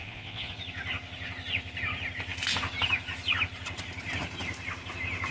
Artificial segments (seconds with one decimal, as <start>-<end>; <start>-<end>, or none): 0.0-0.5

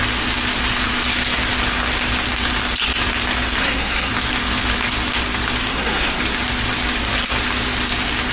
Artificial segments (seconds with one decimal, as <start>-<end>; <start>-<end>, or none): 3.6-4.1; 5.7-6.2

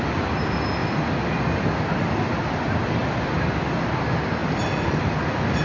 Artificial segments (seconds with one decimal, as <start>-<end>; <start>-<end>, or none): none

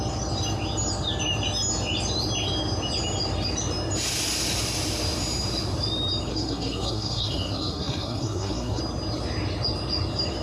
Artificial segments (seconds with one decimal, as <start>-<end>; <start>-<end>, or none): 6.3-8.8

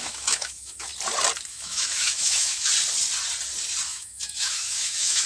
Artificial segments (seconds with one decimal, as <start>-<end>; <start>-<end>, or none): 0.0-0.9; 1.5-2.7; 3.9-5.3

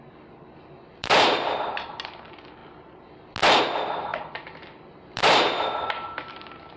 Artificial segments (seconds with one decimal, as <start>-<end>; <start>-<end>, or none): 1.0-1.6; 4.1-6.8